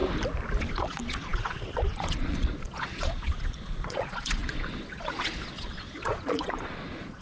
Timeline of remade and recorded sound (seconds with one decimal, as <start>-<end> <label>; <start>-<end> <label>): 0.0-0.6 recorded; 0.6-7.2 remade